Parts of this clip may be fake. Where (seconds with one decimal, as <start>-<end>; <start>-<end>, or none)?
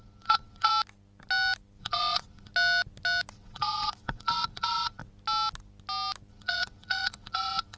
0.0-0.7; 1.8-2.5; 3.3-5.0; 6.3-7.8